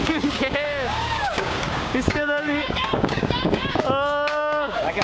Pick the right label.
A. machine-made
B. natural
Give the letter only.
A